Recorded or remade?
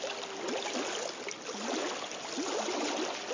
recorded